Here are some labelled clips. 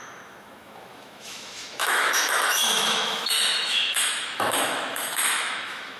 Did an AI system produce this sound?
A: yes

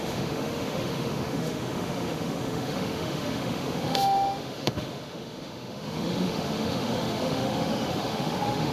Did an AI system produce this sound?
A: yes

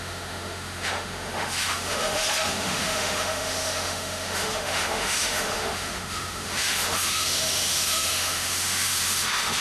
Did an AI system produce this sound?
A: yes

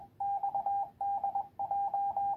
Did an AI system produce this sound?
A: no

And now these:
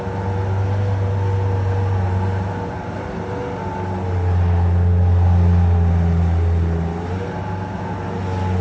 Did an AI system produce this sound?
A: no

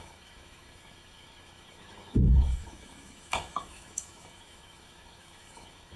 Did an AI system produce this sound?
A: yes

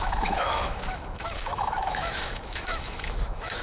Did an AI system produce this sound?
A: yes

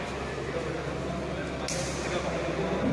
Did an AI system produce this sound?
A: no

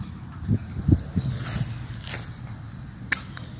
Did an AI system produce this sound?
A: no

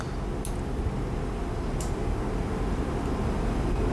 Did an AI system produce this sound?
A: no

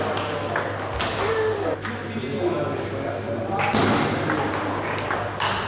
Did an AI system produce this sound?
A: no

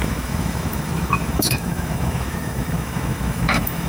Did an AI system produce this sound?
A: yes